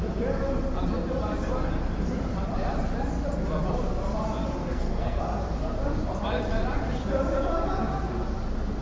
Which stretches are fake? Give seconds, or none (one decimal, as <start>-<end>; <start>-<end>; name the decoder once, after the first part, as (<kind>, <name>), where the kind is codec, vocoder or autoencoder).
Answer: 4.6-5.2 (codec, SNAC)